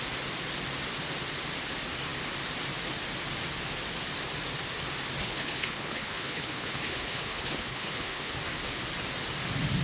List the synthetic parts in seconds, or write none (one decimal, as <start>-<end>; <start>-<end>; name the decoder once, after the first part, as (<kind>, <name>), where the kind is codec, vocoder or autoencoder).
5.2-8.3 (codec, HILCodec)